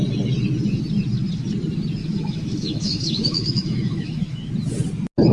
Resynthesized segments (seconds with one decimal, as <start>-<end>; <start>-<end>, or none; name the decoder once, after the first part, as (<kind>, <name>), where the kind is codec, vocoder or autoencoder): 2.0-4.5 (autoencoder, DAC-VAE)